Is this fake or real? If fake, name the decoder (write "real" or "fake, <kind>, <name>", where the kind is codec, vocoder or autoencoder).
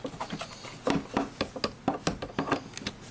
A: real